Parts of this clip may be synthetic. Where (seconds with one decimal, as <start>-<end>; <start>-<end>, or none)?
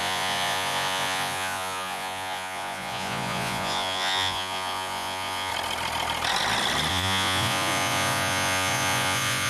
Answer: 0.0-5.5; 6.9-9.5